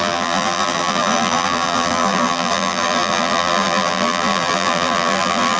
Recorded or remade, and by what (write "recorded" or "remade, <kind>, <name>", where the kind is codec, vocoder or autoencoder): remade, vocoder, BigVGAN v2